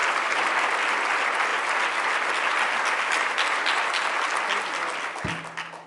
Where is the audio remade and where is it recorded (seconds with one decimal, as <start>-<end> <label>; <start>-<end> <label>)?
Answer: 0.0-5.9 recorded